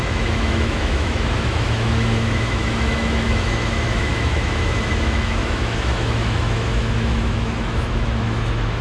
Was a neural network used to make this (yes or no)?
yes